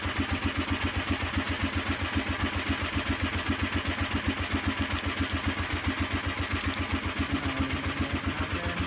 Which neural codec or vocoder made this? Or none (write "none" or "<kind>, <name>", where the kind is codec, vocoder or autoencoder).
none